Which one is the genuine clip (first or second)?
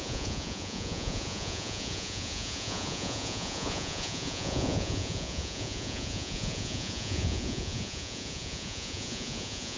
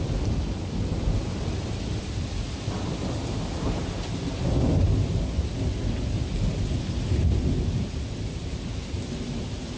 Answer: second